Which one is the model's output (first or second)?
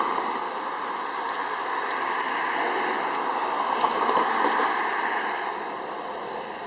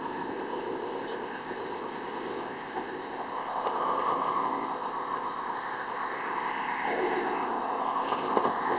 second